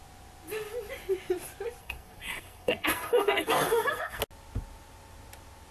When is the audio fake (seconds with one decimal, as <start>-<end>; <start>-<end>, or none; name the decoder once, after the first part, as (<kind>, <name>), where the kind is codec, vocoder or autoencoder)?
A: 1.8-4.2 (codec, SNAC)